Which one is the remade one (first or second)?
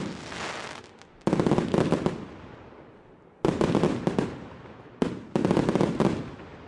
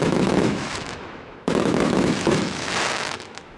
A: second